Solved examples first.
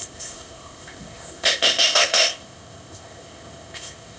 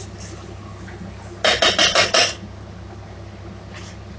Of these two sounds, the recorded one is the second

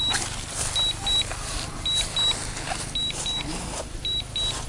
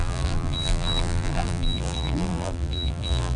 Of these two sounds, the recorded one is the first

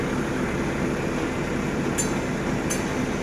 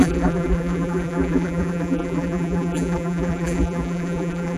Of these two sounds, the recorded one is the first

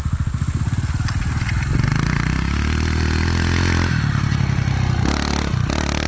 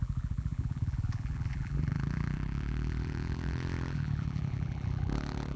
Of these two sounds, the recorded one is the first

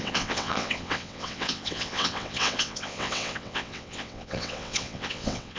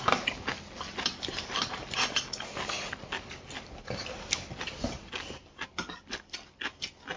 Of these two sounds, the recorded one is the second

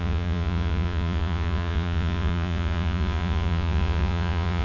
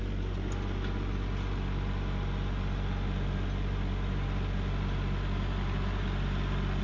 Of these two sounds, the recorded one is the second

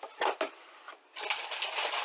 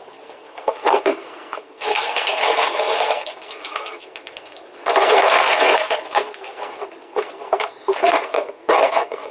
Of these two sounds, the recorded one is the first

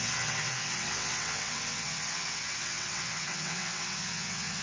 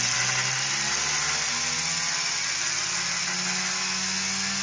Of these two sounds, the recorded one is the second